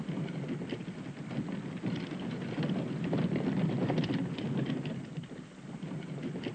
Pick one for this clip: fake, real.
real